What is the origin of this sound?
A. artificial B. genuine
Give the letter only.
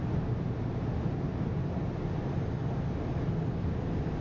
B